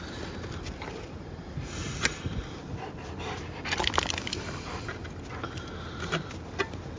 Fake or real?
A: real